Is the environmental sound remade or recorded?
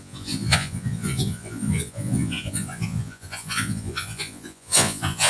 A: remade